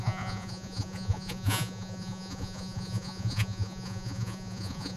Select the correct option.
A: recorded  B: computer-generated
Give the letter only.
B